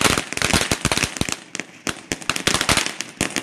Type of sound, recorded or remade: recorded